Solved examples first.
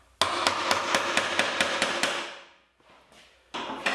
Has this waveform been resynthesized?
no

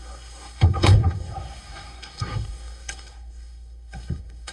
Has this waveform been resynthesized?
yes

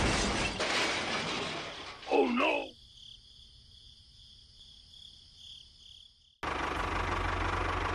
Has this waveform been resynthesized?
no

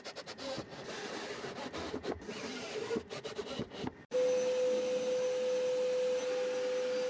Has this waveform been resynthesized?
no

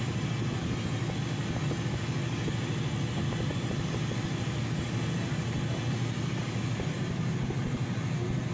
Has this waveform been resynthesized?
no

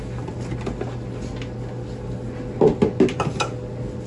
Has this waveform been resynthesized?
no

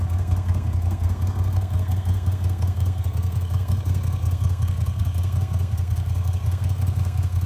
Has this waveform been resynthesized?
yes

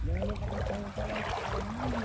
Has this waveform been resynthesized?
no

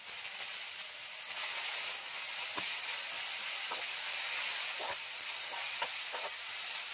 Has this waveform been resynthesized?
no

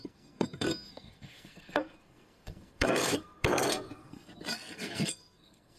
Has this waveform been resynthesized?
yes